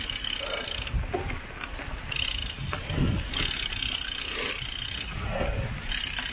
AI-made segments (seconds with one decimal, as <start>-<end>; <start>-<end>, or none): none